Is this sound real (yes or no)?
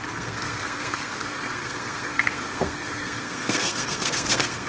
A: no